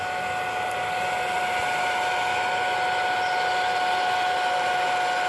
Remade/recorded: recorded